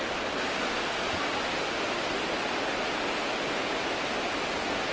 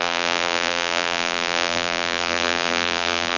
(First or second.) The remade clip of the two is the second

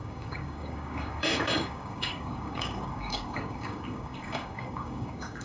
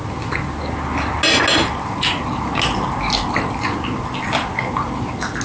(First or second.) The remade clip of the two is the first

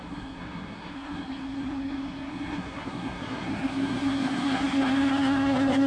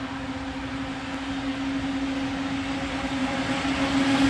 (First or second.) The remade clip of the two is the first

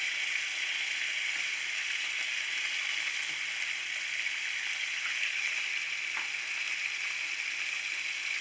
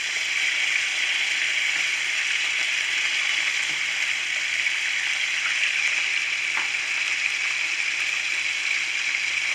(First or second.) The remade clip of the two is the second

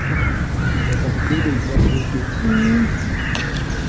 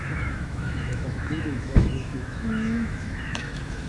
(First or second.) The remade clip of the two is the second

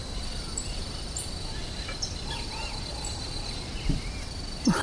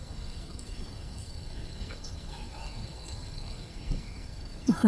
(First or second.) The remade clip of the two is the second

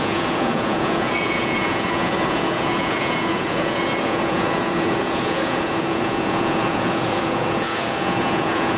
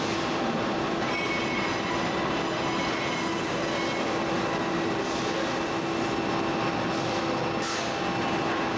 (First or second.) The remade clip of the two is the first